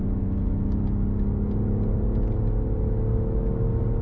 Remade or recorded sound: recorded